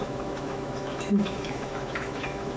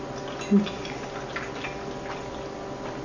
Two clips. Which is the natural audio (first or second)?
second